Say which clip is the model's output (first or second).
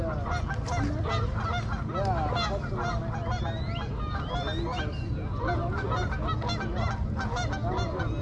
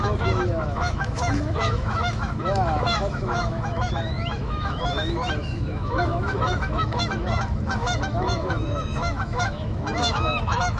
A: second